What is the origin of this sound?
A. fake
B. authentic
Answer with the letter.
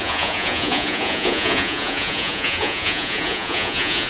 A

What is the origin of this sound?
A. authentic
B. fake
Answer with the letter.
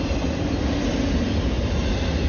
A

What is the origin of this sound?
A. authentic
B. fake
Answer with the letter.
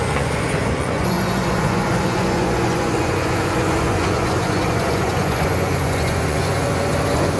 B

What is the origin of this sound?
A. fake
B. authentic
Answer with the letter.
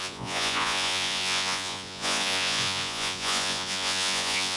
A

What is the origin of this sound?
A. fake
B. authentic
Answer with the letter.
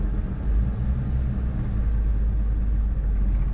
B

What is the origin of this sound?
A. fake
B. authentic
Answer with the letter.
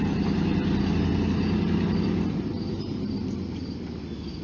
B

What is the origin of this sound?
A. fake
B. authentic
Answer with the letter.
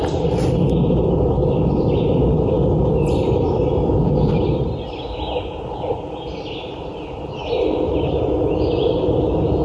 B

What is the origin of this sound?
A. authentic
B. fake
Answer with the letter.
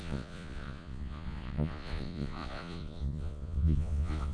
B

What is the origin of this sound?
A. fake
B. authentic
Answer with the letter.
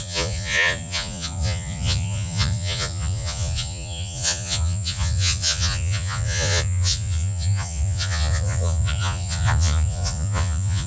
A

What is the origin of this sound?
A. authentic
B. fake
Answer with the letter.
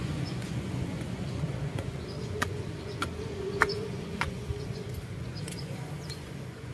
B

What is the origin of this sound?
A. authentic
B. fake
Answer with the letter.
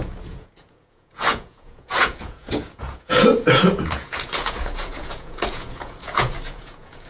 B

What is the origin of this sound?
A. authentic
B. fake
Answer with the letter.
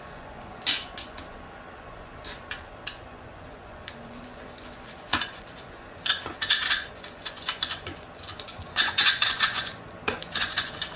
B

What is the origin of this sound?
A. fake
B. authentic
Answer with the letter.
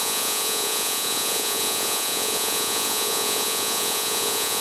A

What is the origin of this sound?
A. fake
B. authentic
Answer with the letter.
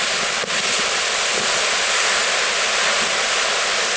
B